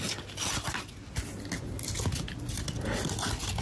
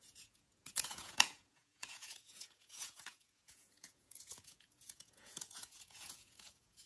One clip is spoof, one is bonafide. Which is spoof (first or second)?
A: second